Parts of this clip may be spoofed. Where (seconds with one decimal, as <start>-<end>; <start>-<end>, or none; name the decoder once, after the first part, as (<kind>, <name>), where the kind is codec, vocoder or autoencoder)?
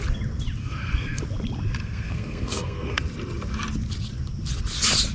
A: 0.6-1.2 (codec, SNAC); 1.8-3.0